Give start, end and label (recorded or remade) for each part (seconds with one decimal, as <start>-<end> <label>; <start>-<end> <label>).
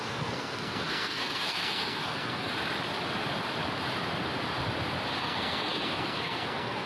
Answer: 0.0-2.5 remade; 2.5-5.2 recorded; 5.2-6.9 remade